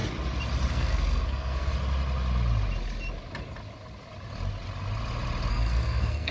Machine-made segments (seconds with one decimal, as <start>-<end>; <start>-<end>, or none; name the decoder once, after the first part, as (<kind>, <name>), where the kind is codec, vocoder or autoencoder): 0.7-1.7 (codec, SNAC); 5.5-6.3